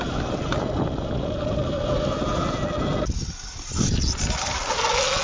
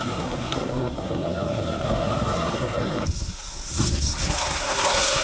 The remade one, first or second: second